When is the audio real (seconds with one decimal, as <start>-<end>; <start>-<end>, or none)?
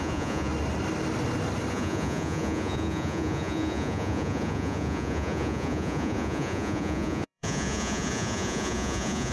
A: 0.5-1.7